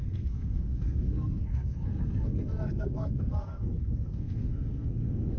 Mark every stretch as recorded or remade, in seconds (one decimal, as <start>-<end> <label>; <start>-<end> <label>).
0.0-5.4 remade